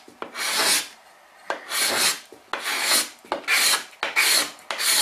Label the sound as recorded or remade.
recorded